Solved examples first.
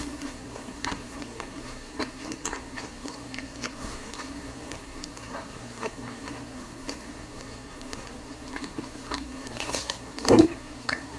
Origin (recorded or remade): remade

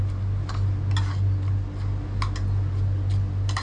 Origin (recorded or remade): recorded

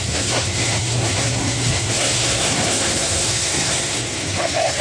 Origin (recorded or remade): remade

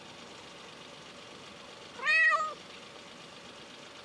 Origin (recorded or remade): recorded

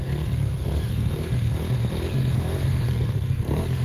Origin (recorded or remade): remade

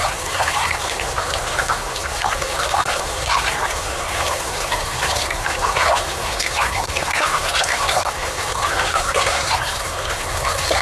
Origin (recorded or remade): remade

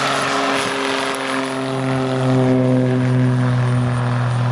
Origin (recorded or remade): recorded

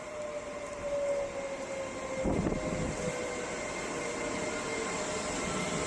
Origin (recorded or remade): recorded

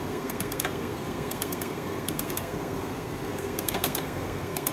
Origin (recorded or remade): remade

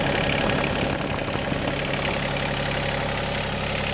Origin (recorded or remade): recorded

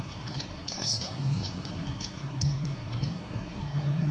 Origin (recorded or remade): remade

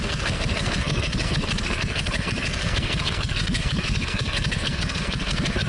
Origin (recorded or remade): remade